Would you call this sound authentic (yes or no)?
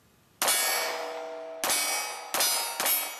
yes